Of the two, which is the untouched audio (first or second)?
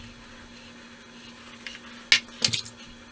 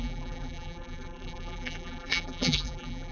first